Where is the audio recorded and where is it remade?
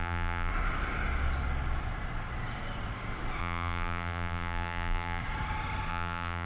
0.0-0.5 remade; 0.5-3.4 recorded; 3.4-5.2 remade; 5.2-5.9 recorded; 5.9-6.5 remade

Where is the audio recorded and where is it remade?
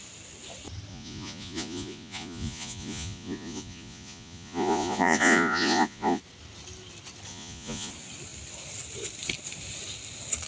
0.0-0.9 recorded; 0.9-6.2 remade; 6.2-7.3 recorded; 7.3-7.9 remade; 7.9-10.5 recorded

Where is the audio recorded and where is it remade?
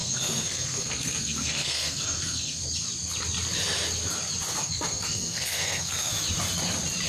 0.0-2.6 remade; 2.6-4.6 recorded; 4.6-6.1 remade; 6.1-7.1 recorded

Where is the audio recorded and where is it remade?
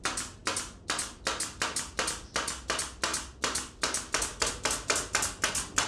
0.0-5.9 recorded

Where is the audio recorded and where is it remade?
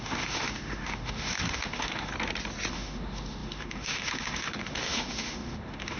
0.0-2.1 remade; 2.1-2.7 recorded; 2.7-6.0 remade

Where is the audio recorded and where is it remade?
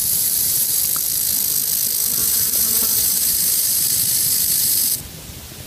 0.0-0.8 remade; 0.8-2.2 recorded; 2.2-5.0 remade; 5.0-5.7 recorded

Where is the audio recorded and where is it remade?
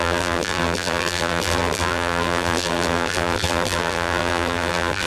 0.0-5.1 remade